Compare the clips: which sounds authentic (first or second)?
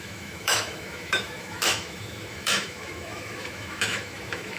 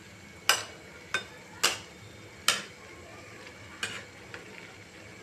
second